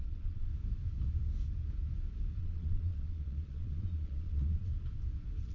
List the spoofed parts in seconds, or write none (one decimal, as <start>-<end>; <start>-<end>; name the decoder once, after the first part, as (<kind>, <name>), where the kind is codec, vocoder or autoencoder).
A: 0.0-0.5 (vocoder, Vocos); 2.4-4.7